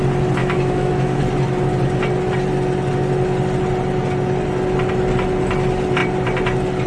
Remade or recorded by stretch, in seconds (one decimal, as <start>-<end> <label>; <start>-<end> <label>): 0.0-0.4 recorded; 0.4-1.2 remade; 1.2-6.9 recorded